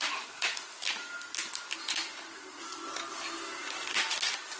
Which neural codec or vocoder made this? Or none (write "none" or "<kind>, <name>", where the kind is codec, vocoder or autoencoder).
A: none